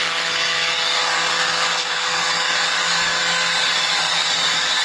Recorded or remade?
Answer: remade